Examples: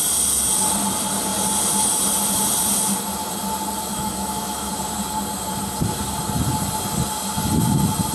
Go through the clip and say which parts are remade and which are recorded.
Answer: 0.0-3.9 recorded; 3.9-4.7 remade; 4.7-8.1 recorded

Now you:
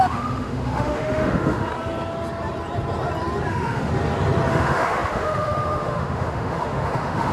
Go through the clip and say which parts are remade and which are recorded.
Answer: 0.0-1.7 remade; 1.7-3.5 recorded; 3.5-3.9 remade; 3.9-4.5 recorded; 4.5-7.3 remade